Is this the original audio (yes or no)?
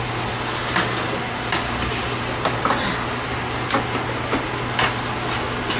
yes